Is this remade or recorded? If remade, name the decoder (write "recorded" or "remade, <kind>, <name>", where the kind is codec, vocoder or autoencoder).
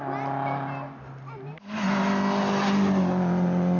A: recorded